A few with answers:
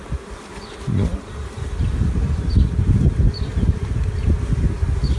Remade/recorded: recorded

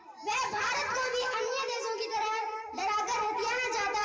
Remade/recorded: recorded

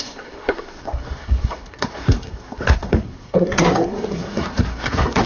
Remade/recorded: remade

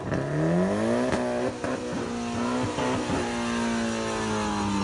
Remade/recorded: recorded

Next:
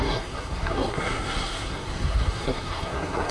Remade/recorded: remade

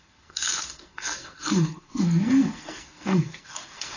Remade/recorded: remade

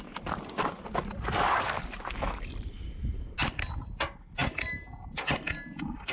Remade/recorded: recorded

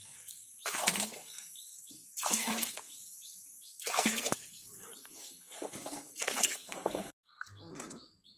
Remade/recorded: remade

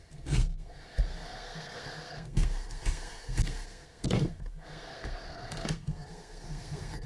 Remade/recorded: remade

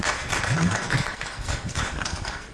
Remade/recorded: remade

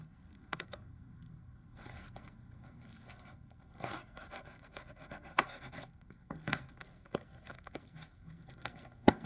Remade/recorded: remade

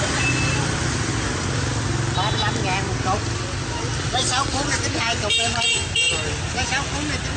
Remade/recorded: recorded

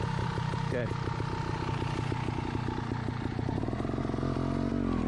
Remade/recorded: recorded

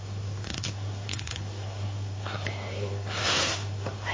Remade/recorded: remade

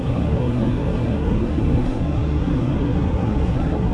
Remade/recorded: remade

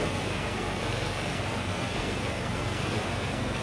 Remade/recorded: remade